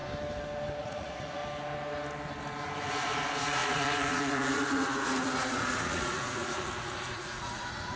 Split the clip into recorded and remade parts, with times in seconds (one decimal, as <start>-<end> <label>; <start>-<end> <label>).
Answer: 0.0-0.8 recorded; 0.8-1.4 remade; 1.4-2.9 recorded; 2.9-8.0 remade